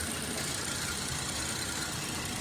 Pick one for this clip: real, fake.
fake